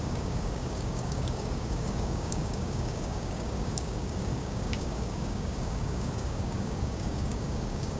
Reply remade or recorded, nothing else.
remade